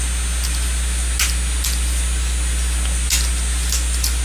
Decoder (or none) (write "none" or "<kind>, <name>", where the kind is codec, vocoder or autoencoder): none